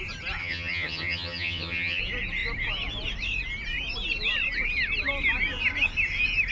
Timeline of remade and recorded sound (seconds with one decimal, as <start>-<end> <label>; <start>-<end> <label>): 0.0-0.4 recorded; 0.4-2.0 remade; 2.0-6.5 recorded